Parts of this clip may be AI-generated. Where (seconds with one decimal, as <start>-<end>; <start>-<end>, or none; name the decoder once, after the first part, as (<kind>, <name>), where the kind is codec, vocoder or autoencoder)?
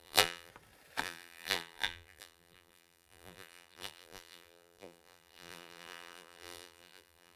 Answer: 0.0-0.5 (vocoder, BigVGAN v2); 1.0-7.4